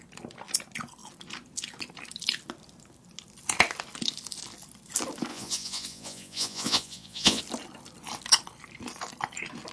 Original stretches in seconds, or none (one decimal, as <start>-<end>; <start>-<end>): 0.0-5.3; 7.4-9.7